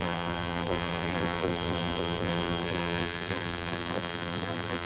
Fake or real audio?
fake